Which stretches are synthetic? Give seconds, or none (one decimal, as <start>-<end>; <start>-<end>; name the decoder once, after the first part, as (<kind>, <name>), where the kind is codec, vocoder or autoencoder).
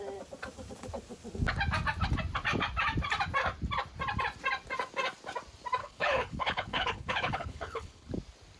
5.8-8.1 (codec, HILCodec)